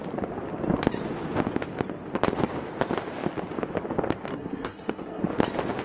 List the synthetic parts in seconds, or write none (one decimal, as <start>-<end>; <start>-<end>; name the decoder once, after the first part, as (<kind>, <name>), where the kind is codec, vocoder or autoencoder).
4.3-5.2 (codec, SNAC)